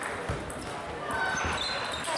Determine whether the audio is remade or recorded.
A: recorded